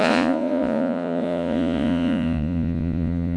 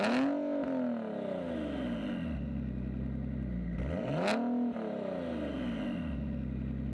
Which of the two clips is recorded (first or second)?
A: second